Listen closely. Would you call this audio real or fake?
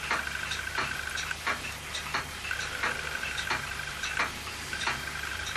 fake